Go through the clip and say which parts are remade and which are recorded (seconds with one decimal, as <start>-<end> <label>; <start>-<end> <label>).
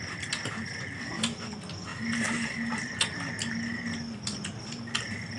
0.0-5.4 recorded